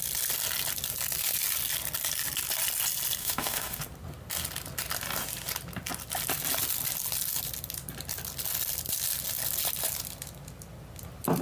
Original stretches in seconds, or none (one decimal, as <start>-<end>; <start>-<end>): 0.0-3.2; 3.8-11.4